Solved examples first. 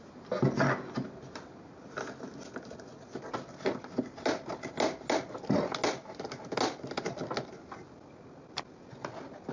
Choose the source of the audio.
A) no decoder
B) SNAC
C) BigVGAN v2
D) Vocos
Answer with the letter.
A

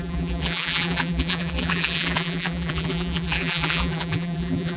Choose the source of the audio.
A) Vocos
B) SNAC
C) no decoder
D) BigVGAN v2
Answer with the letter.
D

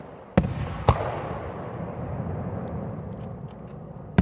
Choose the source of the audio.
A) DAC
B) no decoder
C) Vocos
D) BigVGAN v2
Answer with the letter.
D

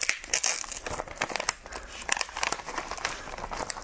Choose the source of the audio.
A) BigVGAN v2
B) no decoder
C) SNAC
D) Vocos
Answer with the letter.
B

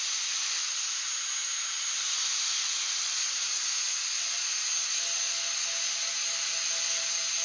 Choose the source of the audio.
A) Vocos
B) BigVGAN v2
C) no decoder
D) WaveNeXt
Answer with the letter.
C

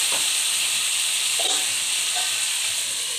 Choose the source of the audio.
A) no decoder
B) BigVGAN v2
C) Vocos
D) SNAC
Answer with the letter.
A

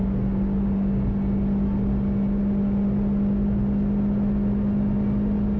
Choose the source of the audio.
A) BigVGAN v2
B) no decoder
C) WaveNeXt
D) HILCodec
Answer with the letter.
B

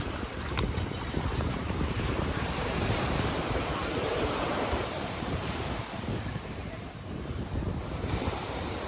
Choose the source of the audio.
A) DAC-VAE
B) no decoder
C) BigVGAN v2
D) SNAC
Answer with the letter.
C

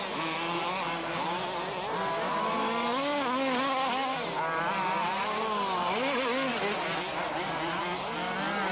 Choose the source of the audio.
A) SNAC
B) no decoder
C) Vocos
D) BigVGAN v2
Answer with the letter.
B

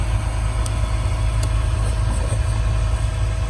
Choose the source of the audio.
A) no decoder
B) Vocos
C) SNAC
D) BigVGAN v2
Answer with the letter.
A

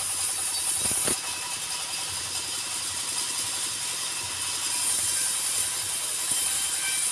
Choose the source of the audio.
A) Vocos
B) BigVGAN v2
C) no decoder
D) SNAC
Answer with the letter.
C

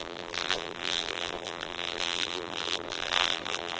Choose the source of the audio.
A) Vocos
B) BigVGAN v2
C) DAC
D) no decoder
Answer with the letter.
B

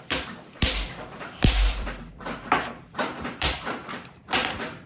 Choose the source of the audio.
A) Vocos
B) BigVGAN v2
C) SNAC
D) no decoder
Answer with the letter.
B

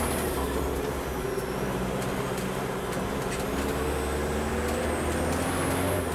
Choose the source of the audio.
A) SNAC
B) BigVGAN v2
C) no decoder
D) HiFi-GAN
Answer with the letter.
C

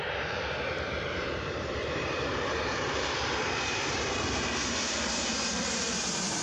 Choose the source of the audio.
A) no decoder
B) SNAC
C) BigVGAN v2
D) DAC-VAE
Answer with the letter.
C